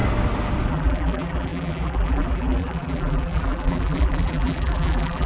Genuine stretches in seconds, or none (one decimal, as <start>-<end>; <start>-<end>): 0.0-0.7